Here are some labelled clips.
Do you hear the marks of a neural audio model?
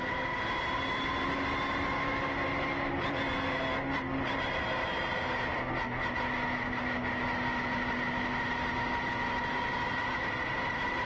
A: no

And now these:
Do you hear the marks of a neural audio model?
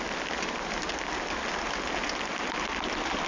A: no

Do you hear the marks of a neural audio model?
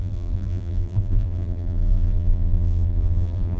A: yes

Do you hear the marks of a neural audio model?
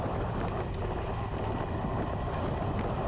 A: no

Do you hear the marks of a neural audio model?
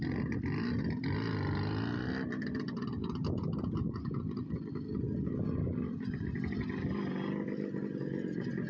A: no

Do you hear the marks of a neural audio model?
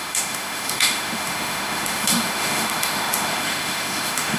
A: yes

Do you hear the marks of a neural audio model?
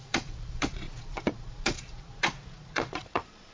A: yes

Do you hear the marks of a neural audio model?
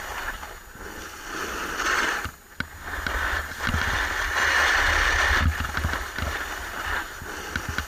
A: no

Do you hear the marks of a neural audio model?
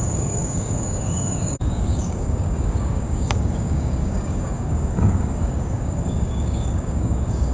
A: yes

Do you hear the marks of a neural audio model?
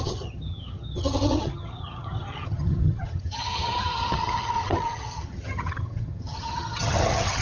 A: yes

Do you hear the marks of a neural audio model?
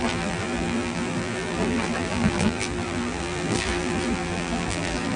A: yes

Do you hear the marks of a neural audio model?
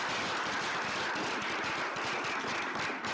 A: no